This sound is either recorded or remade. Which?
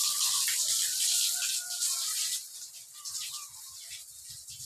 recorded